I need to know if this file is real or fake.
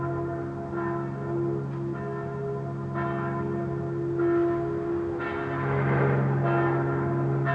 real